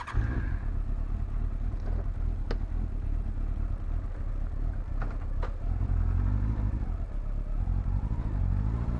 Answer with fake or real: real